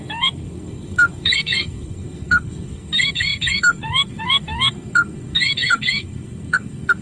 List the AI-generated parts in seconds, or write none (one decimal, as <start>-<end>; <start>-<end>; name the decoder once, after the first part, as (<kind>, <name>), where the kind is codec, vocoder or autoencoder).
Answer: 0.0-7.0 (codec, SNAC)

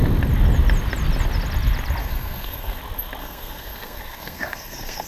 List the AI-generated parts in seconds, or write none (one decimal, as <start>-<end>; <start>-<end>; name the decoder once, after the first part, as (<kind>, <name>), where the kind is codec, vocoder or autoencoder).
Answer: 2.0-2.8 (codec, SNAC); 3.2-5.1

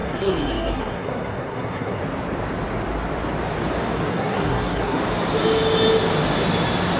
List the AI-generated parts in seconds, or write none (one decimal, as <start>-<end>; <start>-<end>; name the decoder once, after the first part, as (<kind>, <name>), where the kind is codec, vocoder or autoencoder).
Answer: 0.0-2.0 (codec, SNAC); 4.1-5.0

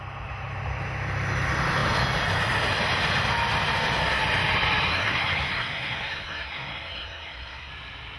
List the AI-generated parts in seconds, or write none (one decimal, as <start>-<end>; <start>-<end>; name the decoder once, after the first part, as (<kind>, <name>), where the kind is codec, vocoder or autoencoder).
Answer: 4.9-7.7 (codec, SNAC)

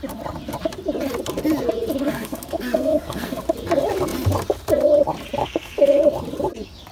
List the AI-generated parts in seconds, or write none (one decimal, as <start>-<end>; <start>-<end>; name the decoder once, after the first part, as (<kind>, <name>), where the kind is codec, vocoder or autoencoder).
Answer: 2.0-3.4 (codec, SNAC); 5.4-6.0

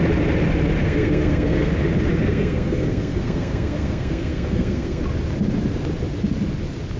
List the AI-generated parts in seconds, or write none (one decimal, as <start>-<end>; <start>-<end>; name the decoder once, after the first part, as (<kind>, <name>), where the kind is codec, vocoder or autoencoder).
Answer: 0.8-1.7 (codec, SNAC); 2.1-5.0

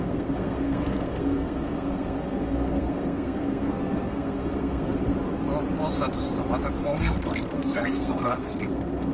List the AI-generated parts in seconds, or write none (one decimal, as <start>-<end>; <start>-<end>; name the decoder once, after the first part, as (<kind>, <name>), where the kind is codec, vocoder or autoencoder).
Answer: 0.0-5.1 (codec, SNAC); 6.7-9.1